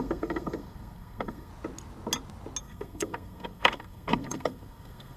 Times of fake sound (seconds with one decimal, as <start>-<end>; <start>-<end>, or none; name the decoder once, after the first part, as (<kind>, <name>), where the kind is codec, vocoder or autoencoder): 0.0-1.5 (codec, SNAC); 2.6-5.2